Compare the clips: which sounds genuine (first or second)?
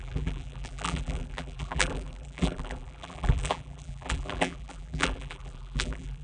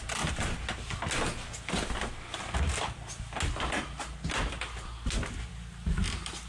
second